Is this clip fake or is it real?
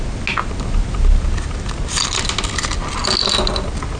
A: real